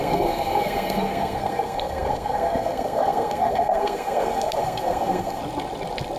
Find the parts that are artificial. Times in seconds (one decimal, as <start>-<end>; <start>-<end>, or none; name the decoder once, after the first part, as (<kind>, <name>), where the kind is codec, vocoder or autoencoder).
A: 0.0-5.4 (codec, SNAC)